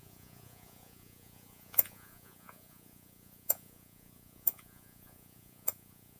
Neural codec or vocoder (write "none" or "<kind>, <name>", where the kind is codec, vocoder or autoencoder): vocoder, Vocos